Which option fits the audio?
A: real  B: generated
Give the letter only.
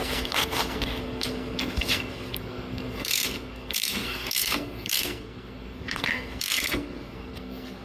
B